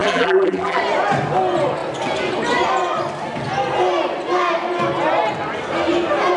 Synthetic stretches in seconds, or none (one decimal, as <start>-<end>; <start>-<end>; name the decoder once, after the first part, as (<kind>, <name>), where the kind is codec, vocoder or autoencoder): 0.0-0.8 (vocoder, BigVGAN v2)